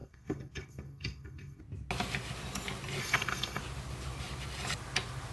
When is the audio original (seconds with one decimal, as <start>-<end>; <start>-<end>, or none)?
1.6-3.0; 3.6-5.3